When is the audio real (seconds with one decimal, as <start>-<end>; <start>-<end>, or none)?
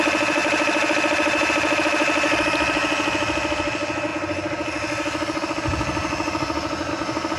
0.0-7.4